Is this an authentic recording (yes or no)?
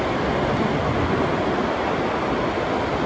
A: yes